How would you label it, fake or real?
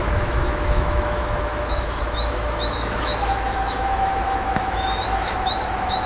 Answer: fake